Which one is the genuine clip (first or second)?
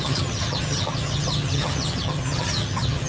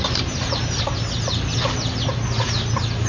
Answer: second